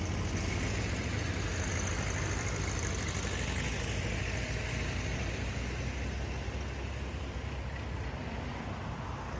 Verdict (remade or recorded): recorded